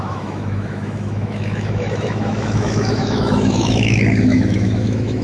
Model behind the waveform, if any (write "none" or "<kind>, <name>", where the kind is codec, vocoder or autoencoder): autoencoder, DAC-VAE